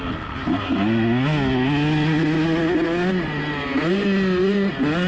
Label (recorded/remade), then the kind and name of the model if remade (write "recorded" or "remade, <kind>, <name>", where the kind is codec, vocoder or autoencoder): recorded